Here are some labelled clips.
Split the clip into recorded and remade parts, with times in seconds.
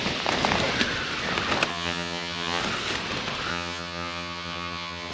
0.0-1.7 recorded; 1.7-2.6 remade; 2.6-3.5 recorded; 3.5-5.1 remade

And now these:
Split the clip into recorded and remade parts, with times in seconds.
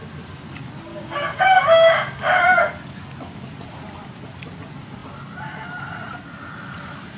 0.0-0.9 recorded; 0.9-2.4 remade; 2.4-7.2 recorded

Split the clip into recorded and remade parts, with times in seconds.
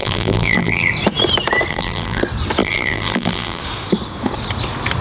0.0-0.9 remade; 0.9-1.7 recorded; 1.7-2.2 remade; 2.2-2.6 recorded; 2.6-3.6 remade; 3.6-5.0 recorded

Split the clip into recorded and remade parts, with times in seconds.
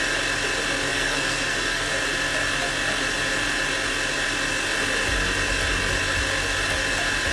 0.0-0.9 recorded; 0.9-1.9 remade; 1.9-7.3 recorded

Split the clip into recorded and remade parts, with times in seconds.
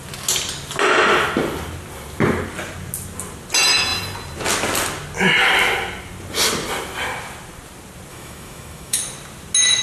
0.0-8.1 recorded; 8.1-9.0 remade; 9.0-9.8 recorded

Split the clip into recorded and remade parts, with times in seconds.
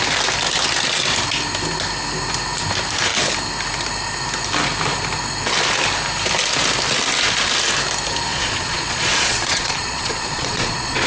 0.0-8.3 recorded; 8.3-11.1 remade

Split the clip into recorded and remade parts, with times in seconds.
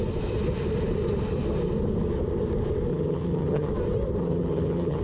0.0-2.9 recorded; 2.9-3.7 remade; 3.7-4.2 recorded; 4.2-5.0 remade